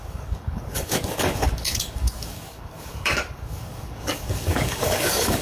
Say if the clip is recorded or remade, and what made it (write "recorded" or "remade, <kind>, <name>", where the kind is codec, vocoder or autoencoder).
remade, codec, DAC